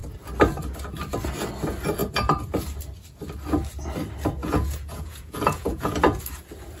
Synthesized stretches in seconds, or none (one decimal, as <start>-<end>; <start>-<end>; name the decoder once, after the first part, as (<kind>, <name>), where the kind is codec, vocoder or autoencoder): 4.4-6.0 (vocoder, Vocos)